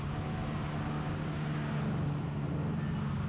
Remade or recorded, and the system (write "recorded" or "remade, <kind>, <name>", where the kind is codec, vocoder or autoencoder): recorded